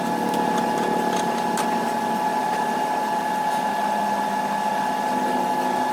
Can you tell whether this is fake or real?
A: real